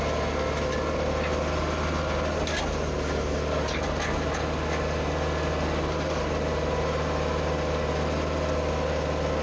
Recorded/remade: recorded